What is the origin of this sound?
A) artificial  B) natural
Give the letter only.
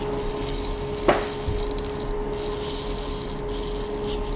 B